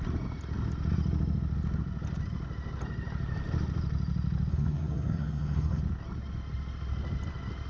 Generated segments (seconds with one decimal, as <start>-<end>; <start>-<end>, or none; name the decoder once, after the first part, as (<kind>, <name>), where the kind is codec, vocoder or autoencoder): 4.5-5.8 (codec, SNAC)